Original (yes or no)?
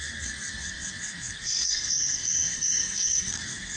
no